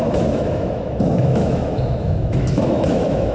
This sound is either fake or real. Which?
fake